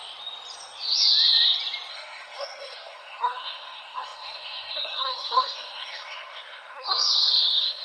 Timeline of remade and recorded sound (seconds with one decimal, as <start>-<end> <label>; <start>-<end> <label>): 0.0-1.9 recorded; 1.9-7.8 remade